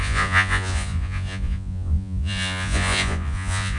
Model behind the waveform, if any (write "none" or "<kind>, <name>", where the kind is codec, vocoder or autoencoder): vocoder, Vocos